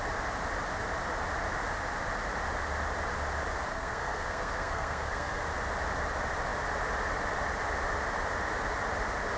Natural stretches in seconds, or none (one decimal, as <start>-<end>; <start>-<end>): 0.0-3.7; 5.4-9.4